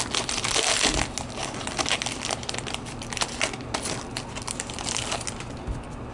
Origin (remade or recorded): recorded